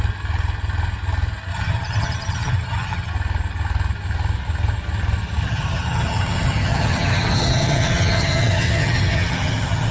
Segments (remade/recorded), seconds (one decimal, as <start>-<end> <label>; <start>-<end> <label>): 0.0-1.5 recorded; 1.5-3.1 remade; 3.1-5.4 recorded; 5.4-9.9 remade